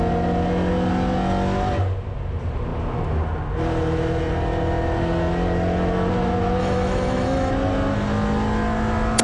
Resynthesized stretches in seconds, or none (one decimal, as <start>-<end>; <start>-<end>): 6.6-7.5